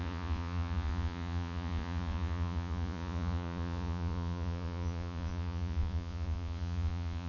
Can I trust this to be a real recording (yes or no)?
no